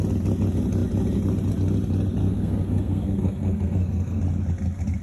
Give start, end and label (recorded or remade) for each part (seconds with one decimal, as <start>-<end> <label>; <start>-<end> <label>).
0.0-2.2 recorded; 2.2-4.2 remade; 4.2-5.0 recorded